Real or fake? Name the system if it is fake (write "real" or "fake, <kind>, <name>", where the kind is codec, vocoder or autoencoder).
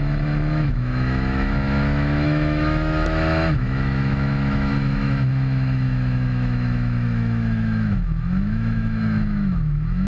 fake, autoencoder, DAC-VAE